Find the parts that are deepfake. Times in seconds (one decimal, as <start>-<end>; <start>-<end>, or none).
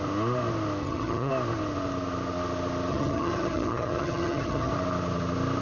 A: 0.8-1.3; 2.9-4.7